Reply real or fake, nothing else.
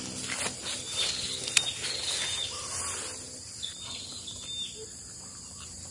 real